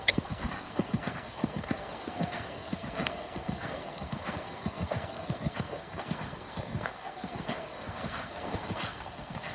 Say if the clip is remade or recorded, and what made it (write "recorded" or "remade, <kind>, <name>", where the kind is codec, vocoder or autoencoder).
remade, codec, SNAC